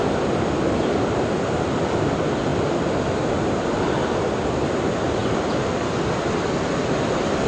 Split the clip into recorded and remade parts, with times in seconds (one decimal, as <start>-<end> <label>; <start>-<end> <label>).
0.0-7.5 recorded